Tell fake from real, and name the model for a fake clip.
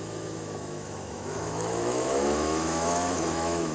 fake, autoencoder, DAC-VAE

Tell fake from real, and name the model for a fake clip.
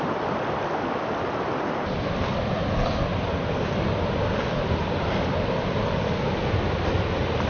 real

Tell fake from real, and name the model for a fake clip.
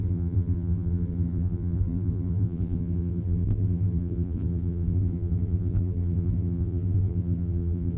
fake, vocoder, BigVGAN v2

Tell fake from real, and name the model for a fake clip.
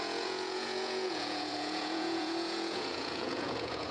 fake, vocoder, Vocos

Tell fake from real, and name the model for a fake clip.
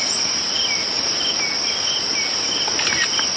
real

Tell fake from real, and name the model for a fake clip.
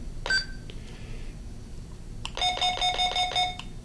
real